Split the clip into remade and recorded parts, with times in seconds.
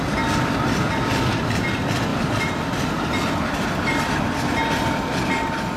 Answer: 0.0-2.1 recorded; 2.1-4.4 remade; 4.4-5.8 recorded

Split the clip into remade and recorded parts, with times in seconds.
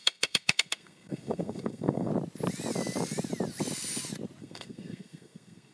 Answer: 0.0-2.1 remade; 2.1-4.4 recorded; 4.4-5.7 remade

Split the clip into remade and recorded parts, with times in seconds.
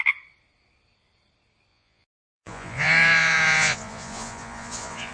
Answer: 0.0-1.7 recorded; 1.7-5.1 remade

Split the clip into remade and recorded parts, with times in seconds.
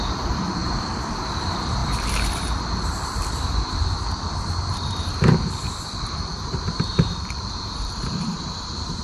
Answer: 0.0-9.0 remade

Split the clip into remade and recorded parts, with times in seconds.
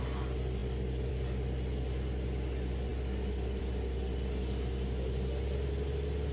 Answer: 0.0-6.3 recorded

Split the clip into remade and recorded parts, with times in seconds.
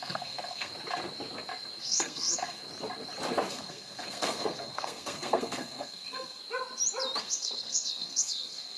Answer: 0.0-0.7 remade; 0.7-1.8 recorded; 1.8-2.6 remade; 2.6-3.5 recorded; 3.5-6.4 remade; 6.4-7.2 recorded; 7.2-8.8 remade